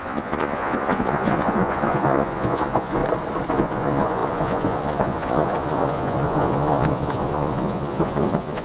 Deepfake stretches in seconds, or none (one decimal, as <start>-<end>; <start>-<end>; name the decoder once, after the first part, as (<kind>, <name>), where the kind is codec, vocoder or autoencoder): 0.0-3.0 (vocoder, Vocos); 3.5-8.6